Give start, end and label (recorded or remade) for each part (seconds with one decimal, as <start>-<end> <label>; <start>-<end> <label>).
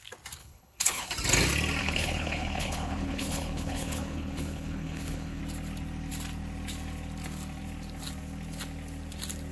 0.0-0.4 recorded; 0.4-1.1 remade; 1.1-1.8 recorded; 1.8-5.4 remade; 5.4-9.5 recorded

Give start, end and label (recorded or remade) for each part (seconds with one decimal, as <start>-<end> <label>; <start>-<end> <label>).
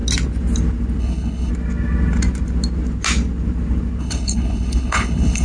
0.0-1.0 recorded; 1.0-1.5 remade; 1.5-4.0 recorded; 4.0-5.4 remade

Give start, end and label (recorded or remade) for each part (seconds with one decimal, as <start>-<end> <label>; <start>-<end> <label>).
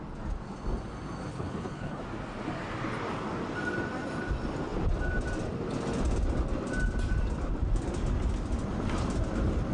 0.0-1.3 recorded; 1.3-2.0 remade; 2.0-9.7 recorded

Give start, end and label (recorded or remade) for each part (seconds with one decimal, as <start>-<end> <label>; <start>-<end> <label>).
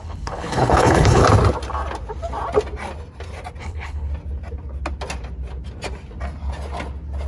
0.0-1.2 remade; 1.2-3.6 recorded; 3.6-4.1 remade; 4.1-7.3 recorded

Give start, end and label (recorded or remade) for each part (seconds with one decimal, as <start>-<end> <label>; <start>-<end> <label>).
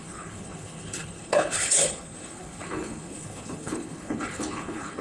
0.0-5.0 remade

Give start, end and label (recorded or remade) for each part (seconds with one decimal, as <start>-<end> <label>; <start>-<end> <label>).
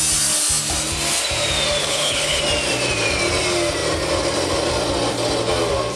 0.0-1.8 recorded; 1.8-2.4 remade; 2.4-6.0 recorded